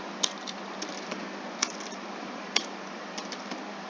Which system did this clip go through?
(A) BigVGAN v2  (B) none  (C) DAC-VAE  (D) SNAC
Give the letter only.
A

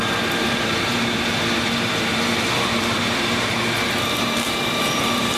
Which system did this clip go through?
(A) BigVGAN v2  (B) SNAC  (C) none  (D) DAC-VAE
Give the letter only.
A